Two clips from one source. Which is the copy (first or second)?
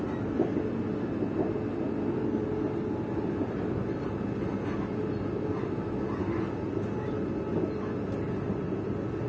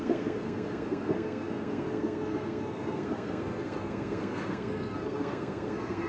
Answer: second